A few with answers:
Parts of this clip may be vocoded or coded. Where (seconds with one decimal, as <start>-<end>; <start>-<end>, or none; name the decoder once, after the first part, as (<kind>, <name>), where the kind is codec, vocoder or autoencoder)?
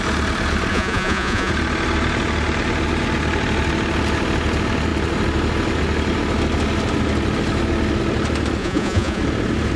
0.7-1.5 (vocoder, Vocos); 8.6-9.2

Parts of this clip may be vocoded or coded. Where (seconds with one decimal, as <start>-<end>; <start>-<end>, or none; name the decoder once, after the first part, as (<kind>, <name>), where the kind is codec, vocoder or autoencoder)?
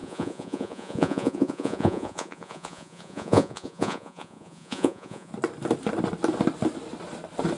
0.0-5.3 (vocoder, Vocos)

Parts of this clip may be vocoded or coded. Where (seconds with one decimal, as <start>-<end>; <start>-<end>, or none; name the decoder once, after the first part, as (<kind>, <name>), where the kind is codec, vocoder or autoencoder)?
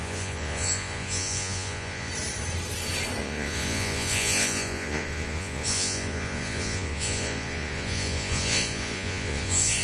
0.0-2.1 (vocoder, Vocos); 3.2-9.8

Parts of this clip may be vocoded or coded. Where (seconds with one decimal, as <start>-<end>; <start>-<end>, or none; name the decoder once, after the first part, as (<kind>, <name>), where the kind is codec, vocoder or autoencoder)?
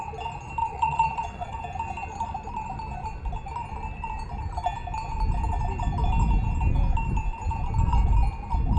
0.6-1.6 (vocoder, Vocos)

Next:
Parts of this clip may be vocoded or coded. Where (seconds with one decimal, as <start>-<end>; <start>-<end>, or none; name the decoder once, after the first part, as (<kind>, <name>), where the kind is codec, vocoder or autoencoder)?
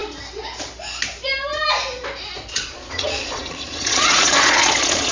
2.5-5.1 (vocoder, Vocos)